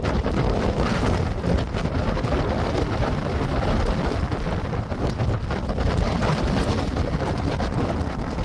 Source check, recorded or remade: recorded